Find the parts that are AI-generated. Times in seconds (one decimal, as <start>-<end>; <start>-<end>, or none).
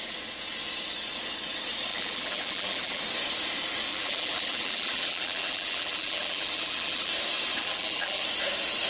1.9-3.0; 3.9-7.1; 7.6-8.2